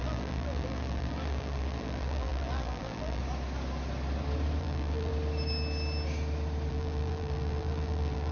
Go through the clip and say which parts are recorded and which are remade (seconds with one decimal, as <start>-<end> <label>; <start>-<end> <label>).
0.0-3.2 remade; 3.2-4.6 recorded; 4.6-5.1 remade; 5.1-6.7 recorded; 6.7-8.3 remade